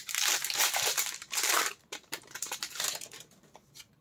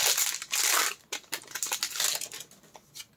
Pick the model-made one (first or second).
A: first